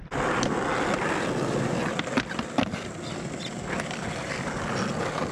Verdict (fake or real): real